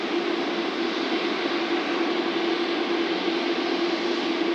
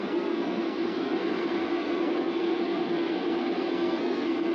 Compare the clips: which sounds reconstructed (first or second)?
second